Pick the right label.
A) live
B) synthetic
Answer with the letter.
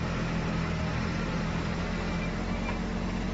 A